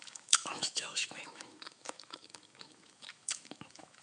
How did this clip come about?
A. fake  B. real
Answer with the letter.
A